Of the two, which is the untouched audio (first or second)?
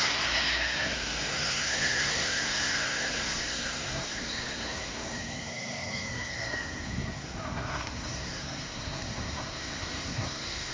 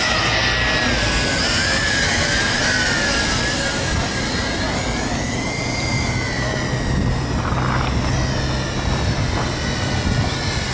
second